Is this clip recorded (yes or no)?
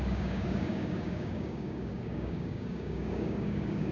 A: no